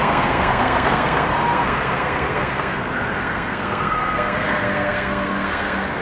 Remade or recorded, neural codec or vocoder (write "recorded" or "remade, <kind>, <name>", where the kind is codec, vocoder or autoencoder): remade, codec, SNAC